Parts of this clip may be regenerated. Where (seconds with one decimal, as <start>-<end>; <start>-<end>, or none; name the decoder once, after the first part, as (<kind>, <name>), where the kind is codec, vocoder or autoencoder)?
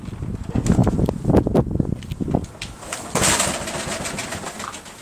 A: none